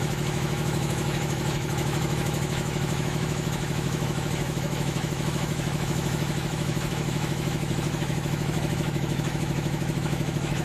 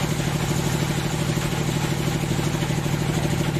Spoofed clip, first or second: first